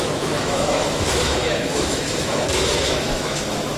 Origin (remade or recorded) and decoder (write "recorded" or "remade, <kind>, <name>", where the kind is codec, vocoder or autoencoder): remade, autoencoder, DAC-VAE